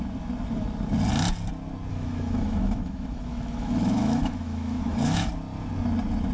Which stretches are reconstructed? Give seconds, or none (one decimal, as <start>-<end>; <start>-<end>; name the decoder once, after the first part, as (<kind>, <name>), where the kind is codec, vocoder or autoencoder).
1.9-5.3 (autoencoder, DAC-VAE)